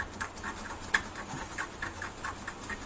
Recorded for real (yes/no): yes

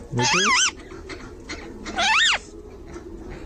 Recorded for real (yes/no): yes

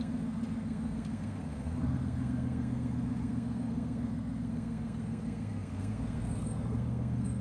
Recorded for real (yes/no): no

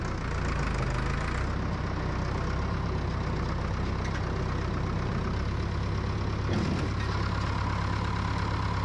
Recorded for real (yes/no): yes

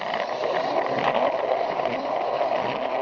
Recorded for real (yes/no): yes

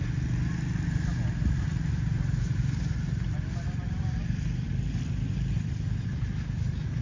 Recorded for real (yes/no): yes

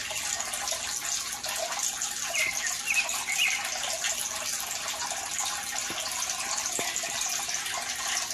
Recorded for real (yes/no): yes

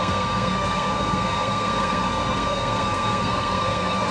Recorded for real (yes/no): no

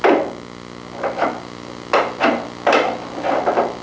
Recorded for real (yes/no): yes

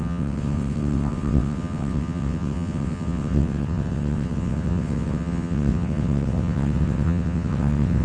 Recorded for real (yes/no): no